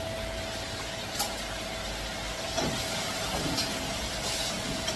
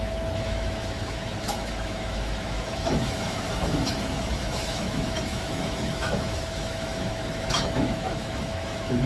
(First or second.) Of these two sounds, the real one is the first